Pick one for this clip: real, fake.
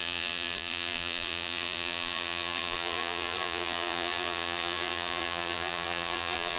fake